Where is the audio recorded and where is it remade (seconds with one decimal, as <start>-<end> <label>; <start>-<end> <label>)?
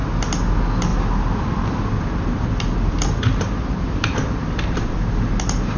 0.0-5.8 recorded